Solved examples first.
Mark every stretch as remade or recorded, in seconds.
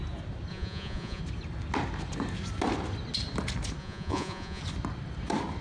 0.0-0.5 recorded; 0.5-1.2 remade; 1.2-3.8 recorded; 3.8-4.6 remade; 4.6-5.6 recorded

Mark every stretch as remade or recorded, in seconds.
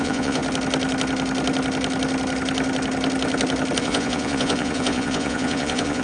0.0-0.4 remade; 0.4-3.8 recorded; 3.8-6.0 remade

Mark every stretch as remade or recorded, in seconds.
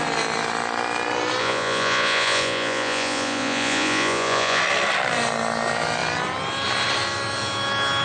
0.0-1.4 recorded; 1.4-4.6 remade; 4.6-8.0 recorded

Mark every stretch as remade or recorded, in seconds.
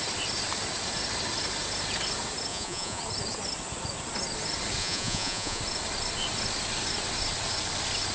0.0-2.5 recorded; 2.5-3.0 remade; 3.0-4.8 recorded; 4.8-5.6 remade; 5.6-8.1 recorded